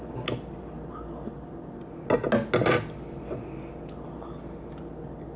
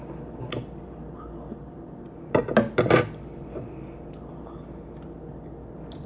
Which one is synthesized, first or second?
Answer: second